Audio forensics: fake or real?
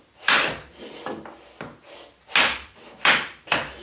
real